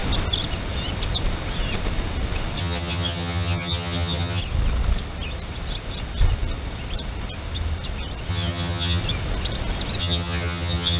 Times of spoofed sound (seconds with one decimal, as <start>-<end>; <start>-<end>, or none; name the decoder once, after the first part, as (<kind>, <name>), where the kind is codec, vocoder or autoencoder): 2.6-4.4 (vocoder, HiFi-GAN); 8.3-9.0; 10.0-11.0